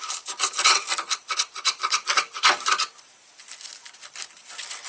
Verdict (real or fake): real